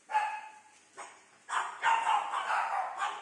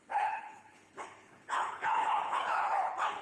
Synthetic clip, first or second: second